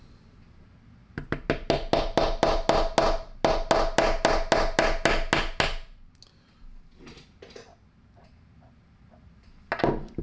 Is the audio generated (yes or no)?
no